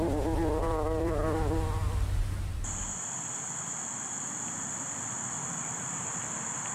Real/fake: fake